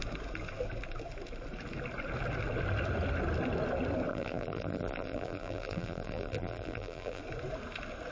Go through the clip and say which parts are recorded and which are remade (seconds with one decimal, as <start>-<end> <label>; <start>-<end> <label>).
0.0-4.1 recorded; 4.1-7.2 remade; 7.2-8.1 recorded